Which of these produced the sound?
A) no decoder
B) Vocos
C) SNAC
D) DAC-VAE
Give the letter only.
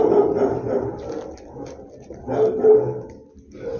A